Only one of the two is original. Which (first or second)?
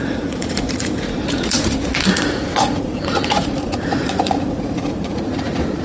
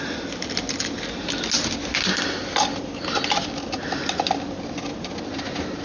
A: second